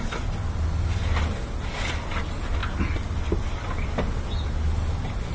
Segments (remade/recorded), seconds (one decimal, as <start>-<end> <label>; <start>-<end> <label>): 0.0-5.3 recorded